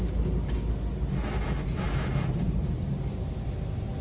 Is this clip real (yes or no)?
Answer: yes